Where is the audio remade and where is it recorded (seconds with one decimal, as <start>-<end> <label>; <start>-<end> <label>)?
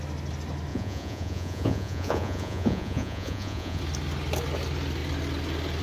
0.0-0.7 recorded; 0.7-3.8 remade; 3.8-5.8 recorded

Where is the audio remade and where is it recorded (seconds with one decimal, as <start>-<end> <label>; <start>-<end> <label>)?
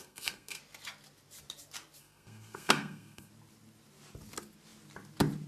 0.0-0.6 remade; 0.6-2.0 recorded; 2.0-3.3 remade; 3.3-5.5 recorded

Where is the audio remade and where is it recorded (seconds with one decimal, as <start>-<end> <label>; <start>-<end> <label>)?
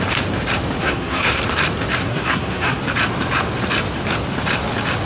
0.0-0.8 recorded; 0.8-1.4 remade; 1.4-2.0 recorded; 2.0-2.8 remade; 2.8-5.0 recorded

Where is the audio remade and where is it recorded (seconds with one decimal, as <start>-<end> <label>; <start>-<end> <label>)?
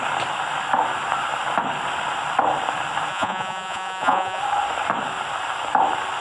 0.0-3.1 recorded; 3.1-4.4 remade; 4.4-6.2 recorded